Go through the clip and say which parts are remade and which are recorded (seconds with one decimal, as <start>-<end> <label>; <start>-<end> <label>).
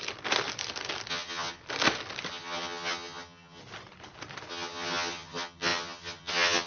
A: 0.0-1.1 recorded; 1.1-1.6 remade; 1.6-2.3 recorded; 2.3-3.6 remade; 3.6-4.5 recorded; 4.5-6.7 remade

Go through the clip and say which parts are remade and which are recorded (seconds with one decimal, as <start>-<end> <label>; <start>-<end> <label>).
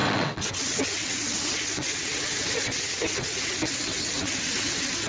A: 0.0-5.1 remade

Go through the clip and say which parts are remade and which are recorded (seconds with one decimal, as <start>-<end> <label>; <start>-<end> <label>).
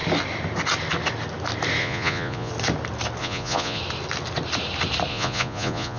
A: 0.0-1.8 recorded; 1.8-2.5 remade; 2.5-3.2 recorded; 3.2-3.8 remade; 3.8-5.1 recorded; 5.1-6.0 remade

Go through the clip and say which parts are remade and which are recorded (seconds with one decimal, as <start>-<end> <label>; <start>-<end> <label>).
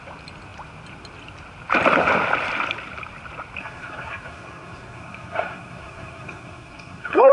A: 0.0-3.6 recorded; 3.6-7.3 remade